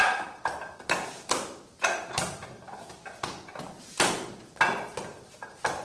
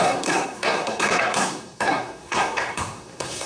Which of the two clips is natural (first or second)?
first